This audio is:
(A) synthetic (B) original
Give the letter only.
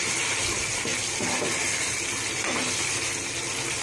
B